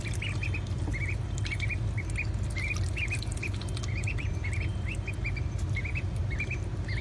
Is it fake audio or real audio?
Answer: real